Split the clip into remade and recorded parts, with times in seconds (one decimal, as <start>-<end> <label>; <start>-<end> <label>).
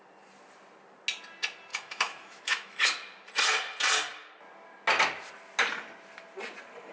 0.0-1.7 recorded; 1.7-2.9 remade; 2.9-6.9 recorded